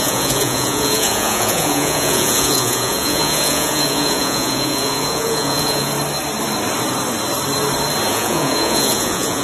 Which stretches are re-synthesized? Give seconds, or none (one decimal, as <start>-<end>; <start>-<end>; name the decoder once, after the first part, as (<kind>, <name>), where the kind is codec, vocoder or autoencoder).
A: 0.0-5.9 (vocoder, Vocos); 8.1-9.4